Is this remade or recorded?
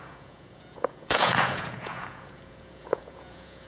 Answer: remade